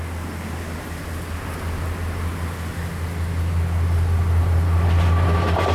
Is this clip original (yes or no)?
yes